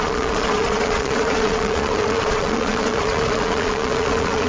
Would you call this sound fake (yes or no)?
yes